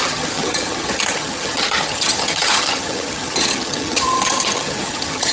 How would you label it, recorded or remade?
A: remade